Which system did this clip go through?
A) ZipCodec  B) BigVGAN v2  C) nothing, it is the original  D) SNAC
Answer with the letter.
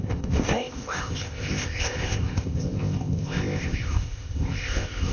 A